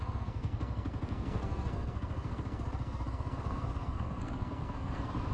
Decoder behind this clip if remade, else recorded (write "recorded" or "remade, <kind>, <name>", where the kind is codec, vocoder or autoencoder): remade, codec, SNAC